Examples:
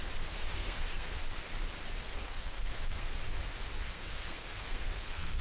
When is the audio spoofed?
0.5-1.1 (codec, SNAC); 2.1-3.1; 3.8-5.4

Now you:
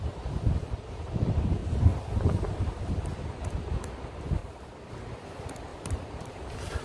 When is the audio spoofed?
1.6-2.8 (vocoder, BigVGAN v2); 4.4-4.9; 5.7-6.8

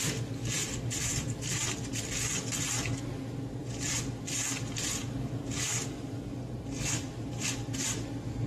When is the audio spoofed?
0.6-1.4 (vocoder, BigVGAN v2); 3.6-4.1; 5.0-7.4

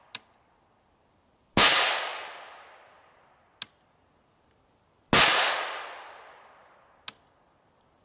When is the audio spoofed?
none

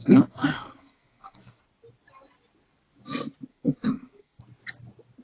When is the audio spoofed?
0.0-1.6 (codec, SNAC); 3.5-4.4

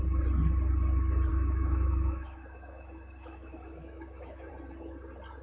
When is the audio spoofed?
1.3-4.5 (autoencoder, DAC-VAE)

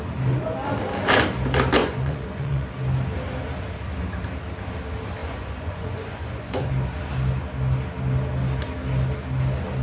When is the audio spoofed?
1.8-2.7 (vocoder, Vocos); 5.2-6.7